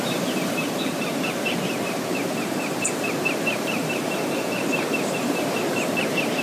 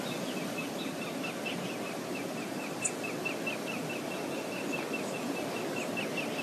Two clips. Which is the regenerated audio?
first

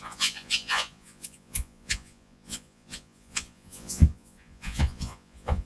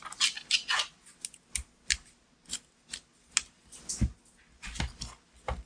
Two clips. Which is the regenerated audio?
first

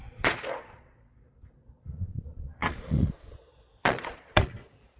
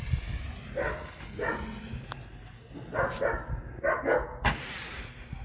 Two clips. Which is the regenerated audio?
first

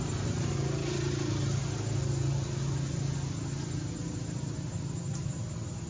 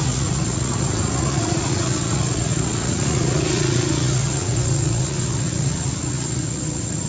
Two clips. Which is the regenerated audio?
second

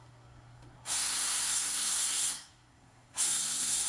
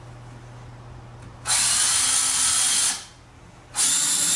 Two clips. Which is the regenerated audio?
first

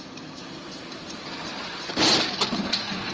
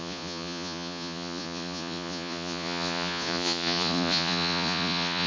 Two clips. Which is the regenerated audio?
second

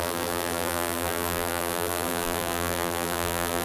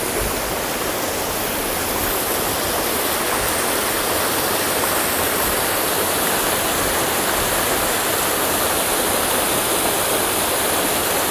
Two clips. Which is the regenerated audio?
first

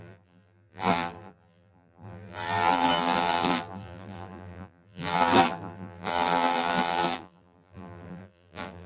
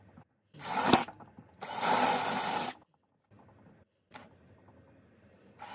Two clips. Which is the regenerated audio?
first